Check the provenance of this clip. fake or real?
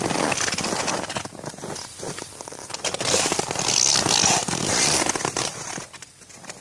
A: real